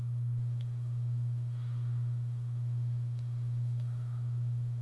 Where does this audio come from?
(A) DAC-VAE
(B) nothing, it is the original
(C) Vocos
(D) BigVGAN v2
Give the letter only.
A